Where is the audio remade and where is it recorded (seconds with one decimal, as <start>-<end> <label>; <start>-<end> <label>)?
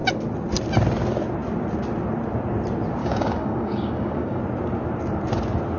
0.0-3.0 recorded; 3.0-4.4 remade; 4.4-5.8 recorded